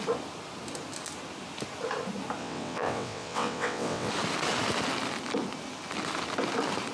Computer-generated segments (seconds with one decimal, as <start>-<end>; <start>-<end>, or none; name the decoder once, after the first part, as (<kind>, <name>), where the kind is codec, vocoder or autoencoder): 2.4-4.1 (vocoder, WaveNeXt)